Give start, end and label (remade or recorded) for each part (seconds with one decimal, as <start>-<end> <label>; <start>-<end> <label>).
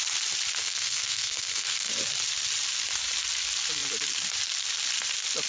0.0-0.6 recorded; 0.6-1.9 remade; 1.9-5.5 recorded